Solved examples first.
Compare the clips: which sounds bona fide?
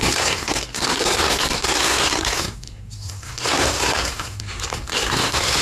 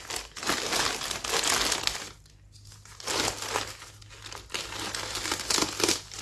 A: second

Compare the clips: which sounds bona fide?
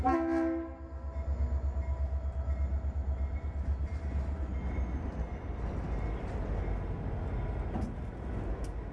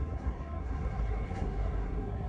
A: first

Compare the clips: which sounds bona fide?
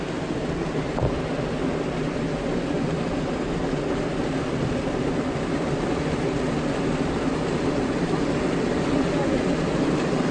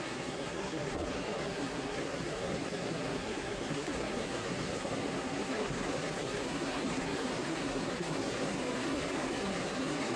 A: first